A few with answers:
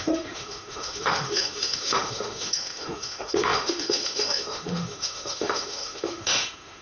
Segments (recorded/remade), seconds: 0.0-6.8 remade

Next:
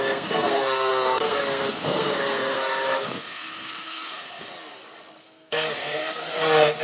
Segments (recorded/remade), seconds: 0.0-4.5 remade; 4.5-5.2 recorded; 5.2-6.8 remade

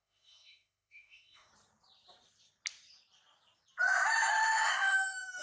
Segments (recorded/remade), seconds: 0.0-1.5 remade; 1.5-4.7 recorded; 4.7-5.4 remade

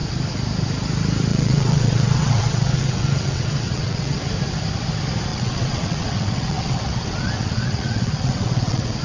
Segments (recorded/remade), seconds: 0.0-1.3 recorded; 1.3-4.2 remade; 4.2-5.3 recorded; 5.3-9.0 remade